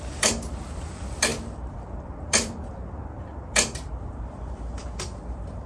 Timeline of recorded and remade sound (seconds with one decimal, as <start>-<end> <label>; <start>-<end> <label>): 0.0-5.7 remade